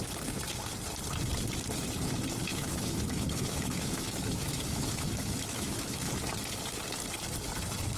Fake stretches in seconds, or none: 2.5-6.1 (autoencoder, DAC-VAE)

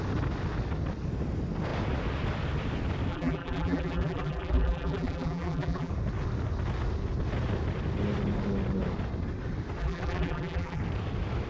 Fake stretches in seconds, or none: 3.1-5.9 (vocoder, BigVGAN v2); 9.8-10.8

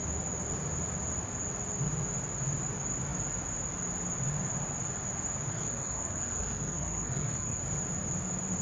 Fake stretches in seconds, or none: 5.5-7.6 (codec, SNAC)

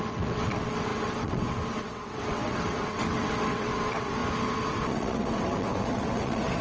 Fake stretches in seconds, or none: 0.0-4.2 (vocoder, WaveNeXt); 4.7-6.6

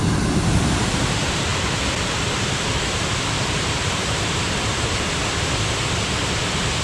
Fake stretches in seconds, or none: 1.5-4.6 (vocoder, BigVGAN v2)

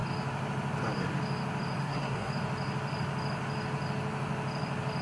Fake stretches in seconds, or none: 1.8-2.3 (codec, SNAC)

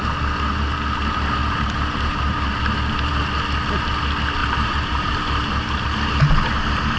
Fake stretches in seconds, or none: 1.4-2.6 (vocoder, BigVGAN v2); 4.4-6.1